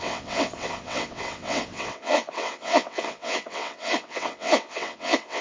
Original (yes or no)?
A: no